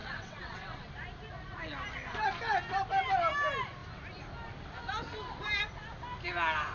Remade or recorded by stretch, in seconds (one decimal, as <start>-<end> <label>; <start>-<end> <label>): 0.0-0.8 remade; 0.8-6.7 recorded